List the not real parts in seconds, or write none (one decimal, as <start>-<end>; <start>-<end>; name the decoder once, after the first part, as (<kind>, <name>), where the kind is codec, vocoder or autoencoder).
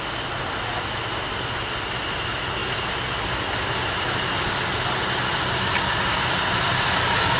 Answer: none